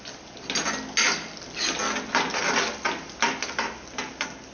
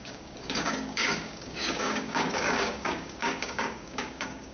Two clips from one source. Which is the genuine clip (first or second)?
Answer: first